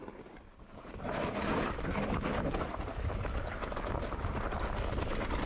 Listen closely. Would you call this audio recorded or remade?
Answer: recorded